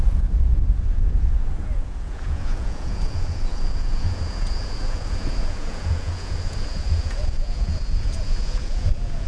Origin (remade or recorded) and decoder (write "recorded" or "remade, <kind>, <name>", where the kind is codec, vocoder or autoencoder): remade, vocoder, Vocos